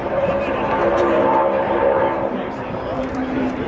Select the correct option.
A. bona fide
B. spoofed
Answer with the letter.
B